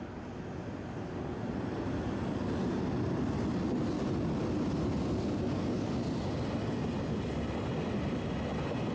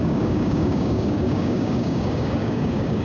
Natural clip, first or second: first